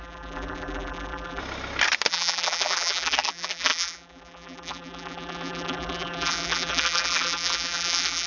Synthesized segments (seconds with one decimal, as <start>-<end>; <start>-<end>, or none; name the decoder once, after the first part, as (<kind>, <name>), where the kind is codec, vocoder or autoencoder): 0.0-1.4 (vocoder, BigVGAN v2); 2.1-8.3